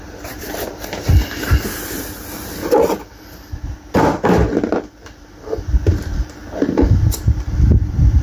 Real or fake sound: fake